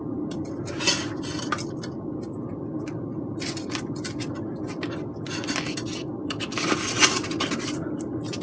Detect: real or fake real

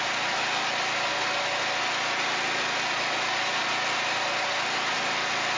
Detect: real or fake real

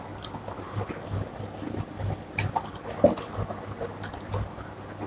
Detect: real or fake real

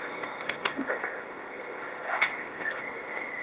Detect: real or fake fake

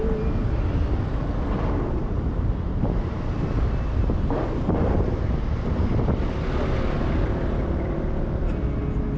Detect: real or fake real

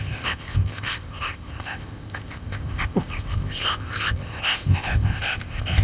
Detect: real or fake fake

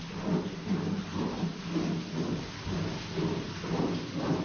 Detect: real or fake real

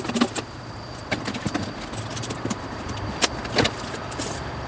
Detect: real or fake real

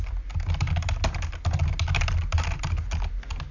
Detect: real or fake real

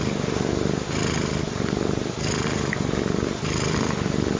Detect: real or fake real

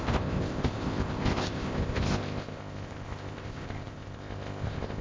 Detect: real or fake fake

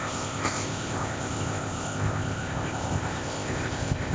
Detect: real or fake fake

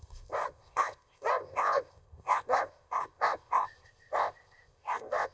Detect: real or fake fake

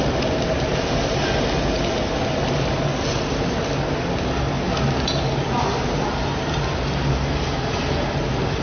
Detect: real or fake real